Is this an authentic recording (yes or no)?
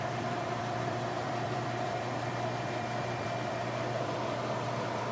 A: no